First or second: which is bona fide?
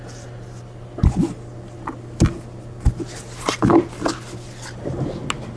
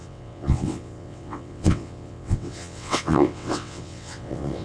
first